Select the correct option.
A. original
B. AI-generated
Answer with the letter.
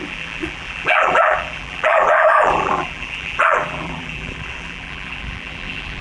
B